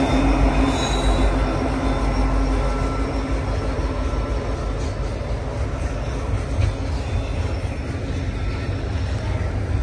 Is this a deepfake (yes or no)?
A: no